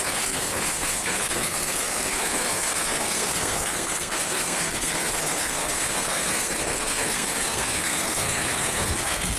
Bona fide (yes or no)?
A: no